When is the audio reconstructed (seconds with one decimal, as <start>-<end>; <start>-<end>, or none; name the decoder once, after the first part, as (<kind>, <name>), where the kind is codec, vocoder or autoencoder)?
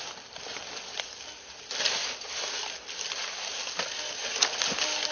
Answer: none